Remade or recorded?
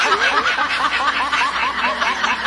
recorded